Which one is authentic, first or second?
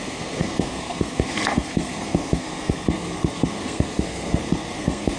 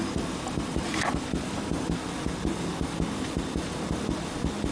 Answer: second